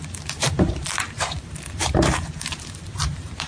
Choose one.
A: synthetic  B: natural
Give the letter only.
A